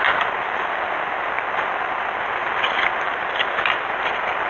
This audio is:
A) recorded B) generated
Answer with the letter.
A